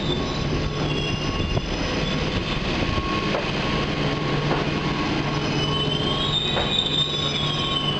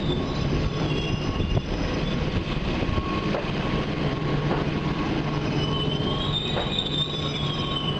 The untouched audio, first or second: first